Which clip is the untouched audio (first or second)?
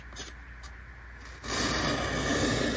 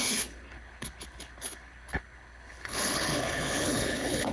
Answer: first